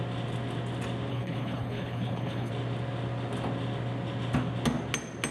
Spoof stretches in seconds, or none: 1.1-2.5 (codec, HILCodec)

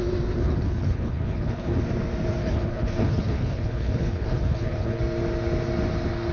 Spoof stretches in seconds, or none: 0.4-1.8 (codec, HILCodec); 2.4-5.0

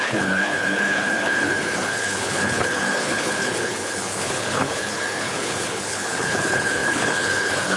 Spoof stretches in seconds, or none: 0.0-7.8 (codec, HILCodec)